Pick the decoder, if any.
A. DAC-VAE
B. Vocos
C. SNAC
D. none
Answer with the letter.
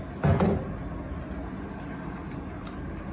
D